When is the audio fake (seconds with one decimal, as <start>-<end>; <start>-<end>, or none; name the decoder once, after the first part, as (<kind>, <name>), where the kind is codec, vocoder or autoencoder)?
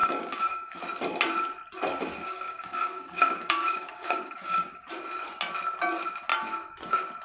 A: 0.0-0.8 (codec, DAC); 2.2-4.9